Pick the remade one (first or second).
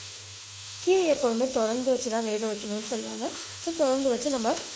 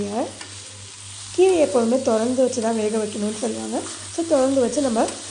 first